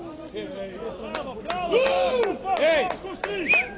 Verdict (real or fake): real